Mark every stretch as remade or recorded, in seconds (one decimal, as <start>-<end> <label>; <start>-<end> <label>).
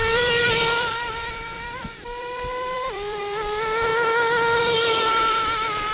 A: 0.0-3.9 remade; 3.9-4.6 recorded; 4.6-5.9 remade